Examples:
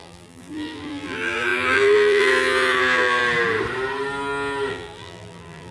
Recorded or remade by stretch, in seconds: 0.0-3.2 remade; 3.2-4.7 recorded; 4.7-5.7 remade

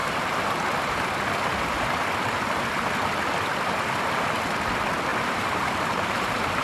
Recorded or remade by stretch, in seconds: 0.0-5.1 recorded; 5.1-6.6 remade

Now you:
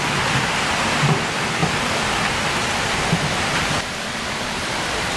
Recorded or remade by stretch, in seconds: 0.0-1.6 remade; 1.6-3.9 recorded; 3.9-5.2 remade

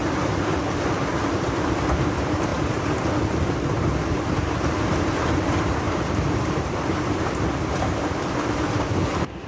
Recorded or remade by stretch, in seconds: 0.0-0.6 recorded; 0.6-2.5 remade; 2.5-5.6 recorded; 5.6-9.5 remade

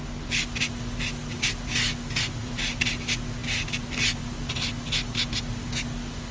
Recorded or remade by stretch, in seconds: 0.0-2.4 recorded; 2.4-2.9 remade; 2.9-6.3 recorded

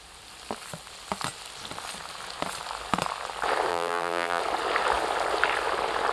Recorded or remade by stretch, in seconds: 0.0-3.7 recorded; 3.7-4.4 remade; 4.4-6.1 recorded

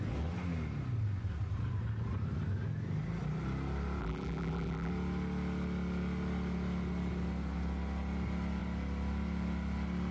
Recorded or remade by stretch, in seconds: 0.0-4.0 recorded; 4.0-4.9 remade; 4.9-10.1 recorded